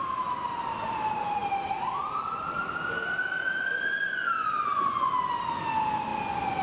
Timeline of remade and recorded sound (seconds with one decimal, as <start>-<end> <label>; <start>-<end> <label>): 0.0-3.6 recorded; 3.6-5.1 remade; 5.1-6.6 recorded